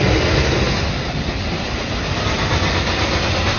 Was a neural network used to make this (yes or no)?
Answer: no